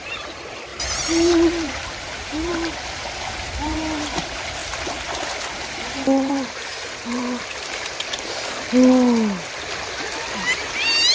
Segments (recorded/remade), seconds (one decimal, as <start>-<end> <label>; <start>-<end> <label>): 0.0-4.6 remade; 4.6-5.7 recorded; 5.7-7.2 remade; 7.2-11.1 recorded